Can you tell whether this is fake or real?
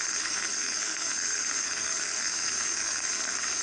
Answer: fake